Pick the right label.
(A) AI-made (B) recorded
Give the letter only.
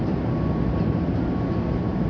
B